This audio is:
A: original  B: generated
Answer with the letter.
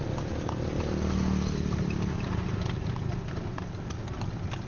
A